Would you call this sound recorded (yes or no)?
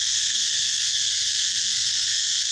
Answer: no